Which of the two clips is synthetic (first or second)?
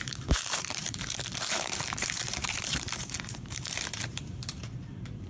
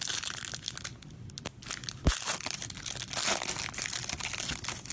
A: first